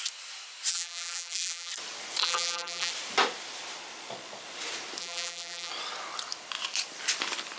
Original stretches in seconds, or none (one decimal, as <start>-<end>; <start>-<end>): 0.0-0.7; 1.7-2.2; 2.9-5.0; 5.7-7.6